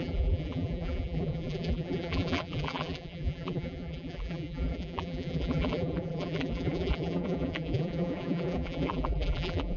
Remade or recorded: remade